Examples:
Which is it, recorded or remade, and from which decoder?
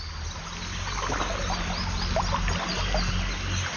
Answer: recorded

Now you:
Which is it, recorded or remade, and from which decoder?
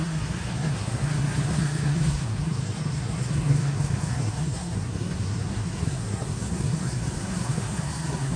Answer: remade, codec, SNAC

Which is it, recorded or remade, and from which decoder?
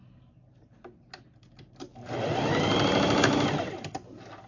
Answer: recorded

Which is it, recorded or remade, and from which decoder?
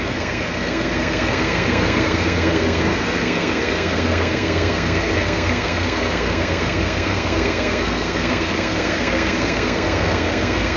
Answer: remade, codec, SNAC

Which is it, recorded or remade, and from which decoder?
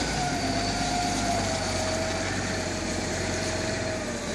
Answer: remade, vocoder, BigVGAN v2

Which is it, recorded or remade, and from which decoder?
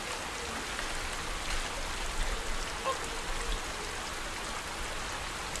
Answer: recorded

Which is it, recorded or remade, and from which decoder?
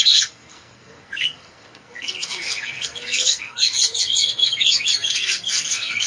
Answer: remade, codec, SNAC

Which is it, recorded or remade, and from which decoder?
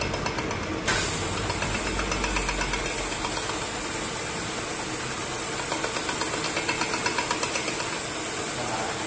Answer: recorded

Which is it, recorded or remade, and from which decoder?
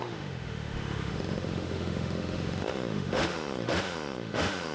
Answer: remade, autoencoder, DAC-VAE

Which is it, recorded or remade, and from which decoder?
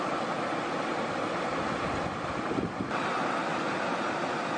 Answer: recorded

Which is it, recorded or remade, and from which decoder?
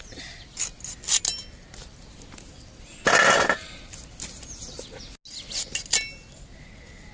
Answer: recorded